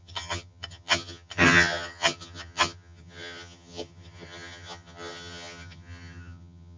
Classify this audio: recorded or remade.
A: remade